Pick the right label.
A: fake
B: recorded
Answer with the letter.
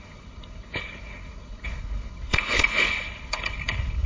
A